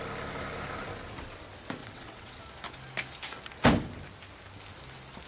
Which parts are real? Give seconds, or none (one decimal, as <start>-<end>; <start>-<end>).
0.0-1.8; 2.4-5.3